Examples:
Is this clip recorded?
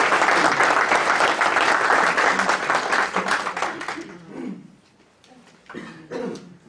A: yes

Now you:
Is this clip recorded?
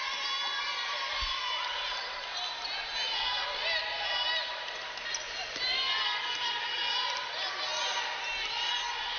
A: yes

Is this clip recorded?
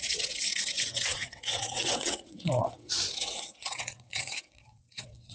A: no